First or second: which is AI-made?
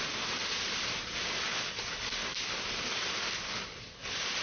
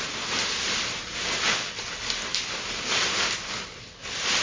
first